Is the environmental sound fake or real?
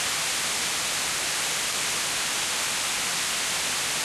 real